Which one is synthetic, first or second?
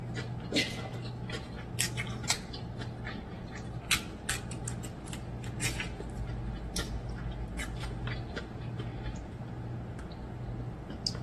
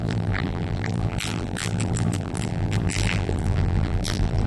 second